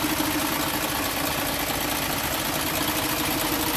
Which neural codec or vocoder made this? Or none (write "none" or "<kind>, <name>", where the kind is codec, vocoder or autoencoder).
none